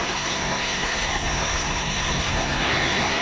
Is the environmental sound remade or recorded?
remade